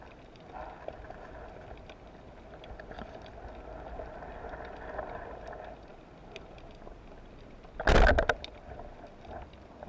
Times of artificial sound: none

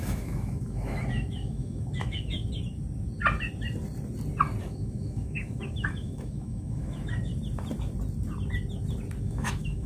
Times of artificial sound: 0.0-2.4 (autoencoder, DAC-VAE); 4.6-7.3; 9.2-9.9

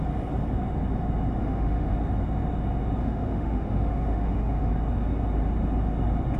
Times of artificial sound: 1.4-1.9 (autoencoder, DAC-VAE); 3.0-4.7